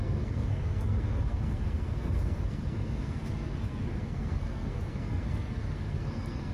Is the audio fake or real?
fake